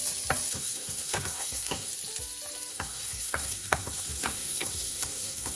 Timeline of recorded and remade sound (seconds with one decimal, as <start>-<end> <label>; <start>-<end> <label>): 0.0-0.5 recorded; 0.5-1.9 remade; 1.9-2.7 recorded; 2.7-5.5 remade